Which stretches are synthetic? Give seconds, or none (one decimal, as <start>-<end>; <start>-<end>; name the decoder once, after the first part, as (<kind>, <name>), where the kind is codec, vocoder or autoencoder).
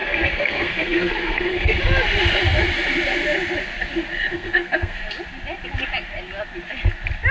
0.0-1.8 (codec, SNAC); 4.3-5.0